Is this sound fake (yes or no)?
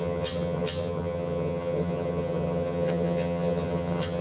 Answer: yes